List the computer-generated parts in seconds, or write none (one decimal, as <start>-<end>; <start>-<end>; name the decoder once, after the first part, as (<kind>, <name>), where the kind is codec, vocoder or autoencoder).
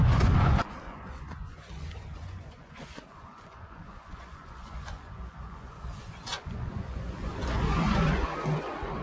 0.0-9.0 (vocoder, Vocos)